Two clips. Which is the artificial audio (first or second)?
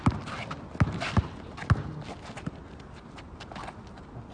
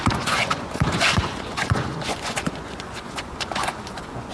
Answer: second